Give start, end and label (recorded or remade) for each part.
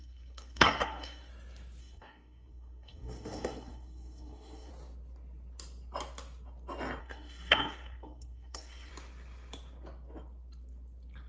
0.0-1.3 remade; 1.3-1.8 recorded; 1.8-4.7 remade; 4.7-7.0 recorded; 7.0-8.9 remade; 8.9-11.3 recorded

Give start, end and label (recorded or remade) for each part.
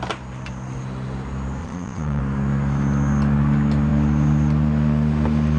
0.0-1.6 recorded; 1.6-2.2 remade; 2.2-5.6 recorded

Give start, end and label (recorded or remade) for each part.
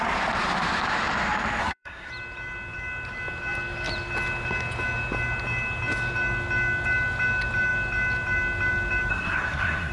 0.0-1.6 recorded; 1.6-2.1 remade; 2.1-9.1 recorded; 9.1-9.9 remade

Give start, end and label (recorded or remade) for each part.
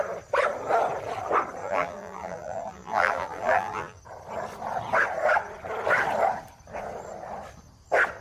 0.0-1.6 recorded; 1.6-4.0 remade; 4.0-8.2 recorded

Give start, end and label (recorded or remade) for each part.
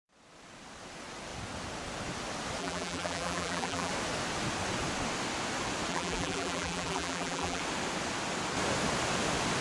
0.0-2.6 recorded; 2.6-3.9 remade; 3.9-5.9 recorded; 5.9-7.6 remade; 7.6-9.6 recorded